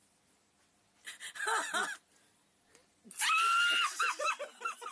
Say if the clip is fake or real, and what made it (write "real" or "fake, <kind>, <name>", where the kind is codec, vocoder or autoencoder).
real